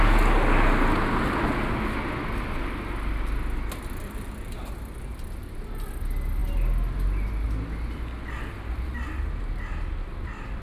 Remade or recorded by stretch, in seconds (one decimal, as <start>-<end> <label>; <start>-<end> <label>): 0.0-10.6 recorded